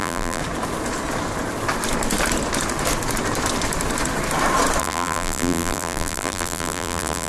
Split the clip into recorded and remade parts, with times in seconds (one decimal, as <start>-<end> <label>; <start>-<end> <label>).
0.0-0.4 remade; 0.4-4.8 recorded; 4.8-7.3 remade